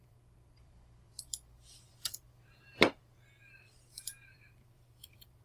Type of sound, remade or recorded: remade